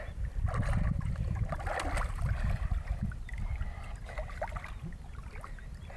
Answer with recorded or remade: recorded